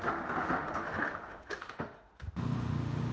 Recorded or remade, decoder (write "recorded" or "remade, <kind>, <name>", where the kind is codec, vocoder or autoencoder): remade, autoencoder, DAC-VAE